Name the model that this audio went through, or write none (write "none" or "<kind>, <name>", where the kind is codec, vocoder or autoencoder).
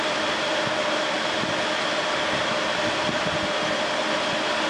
none